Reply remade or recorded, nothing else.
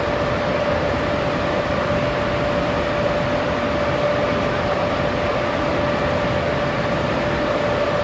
recorded